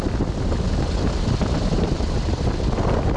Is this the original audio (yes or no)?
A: yes